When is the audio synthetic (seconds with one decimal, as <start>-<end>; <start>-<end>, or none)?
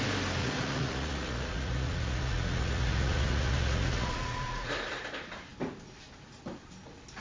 0.4-4.7